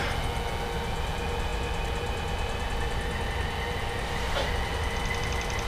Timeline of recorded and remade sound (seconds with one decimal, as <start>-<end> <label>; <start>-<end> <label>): 0.0-5.7 recorded